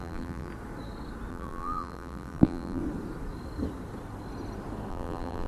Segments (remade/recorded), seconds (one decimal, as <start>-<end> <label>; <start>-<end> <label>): 0.0-0.5 remade; 0.5-1.3 recorded; 1.3-2.8 remade; 2.8-4.9 recorded; 4.9-5.5 remade

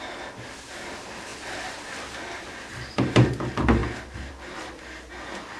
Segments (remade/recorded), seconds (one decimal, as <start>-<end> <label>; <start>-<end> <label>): 0.0-5.6 recorded

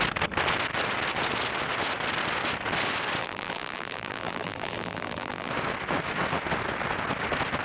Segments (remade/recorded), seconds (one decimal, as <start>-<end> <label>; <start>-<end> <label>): 0.0-3.2 recorded; 3.2-5.5 remade; 5.5-7.6 recorded

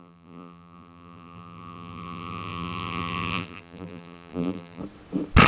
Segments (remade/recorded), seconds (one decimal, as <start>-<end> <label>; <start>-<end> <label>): 0.0-4.8 remade; 4.8-5.5 recorded

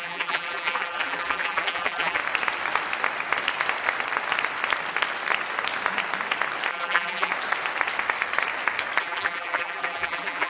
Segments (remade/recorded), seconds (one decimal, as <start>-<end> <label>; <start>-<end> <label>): 0.0-2.2 remade; 2.2-6.7 recorded; 6.7-7.3 remade; 7.3-9.0 recorded; 9.0-10.5 remade

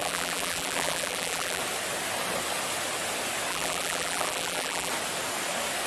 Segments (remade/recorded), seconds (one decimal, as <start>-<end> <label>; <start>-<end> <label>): 0.0-1.6 remade; 1.6-3.5 recorded; 3.5-4.9 remade; 4.9-5.9 recorded

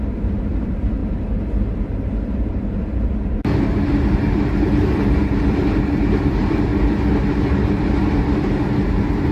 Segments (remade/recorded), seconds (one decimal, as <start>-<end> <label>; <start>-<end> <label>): 0.0-6.7 remade; 6.7-7.3 recorded; 7.3-9.3 remade

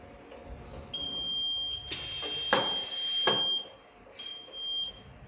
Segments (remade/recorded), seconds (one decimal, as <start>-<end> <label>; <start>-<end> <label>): 0.0-5.3 recorded